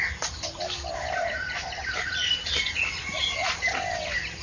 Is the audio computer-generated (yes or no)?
no